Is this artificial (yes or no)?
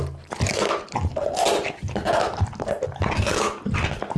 no